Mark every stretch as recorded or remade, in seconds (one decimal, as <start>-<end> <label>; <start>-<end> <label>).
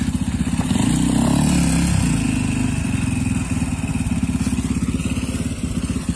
0.0-6.2 recorded